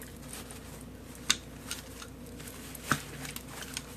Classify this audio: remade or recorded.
recorded